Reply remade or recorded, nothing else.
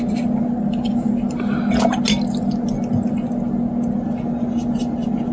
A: recorded